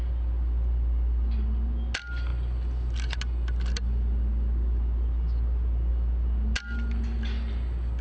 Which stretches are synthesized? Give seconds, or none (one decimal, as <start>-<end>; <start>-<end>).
none